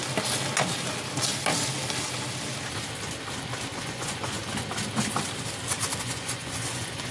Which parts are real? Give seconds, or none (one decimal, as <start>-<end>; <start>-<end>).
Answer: 0.0-3.8; 4.4-6.0